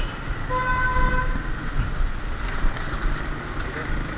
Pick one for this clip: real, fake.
real